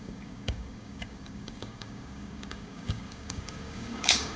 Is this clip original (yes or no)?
no